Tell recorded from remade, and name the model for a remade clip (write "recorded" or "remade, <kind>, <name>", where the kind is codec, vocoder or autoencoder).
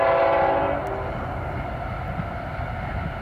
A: recorded